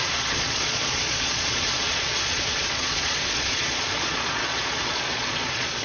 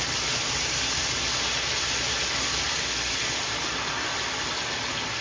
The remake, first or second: first